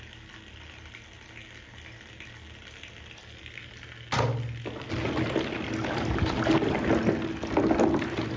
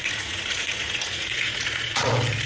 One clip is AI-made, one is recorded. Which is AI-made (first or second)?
second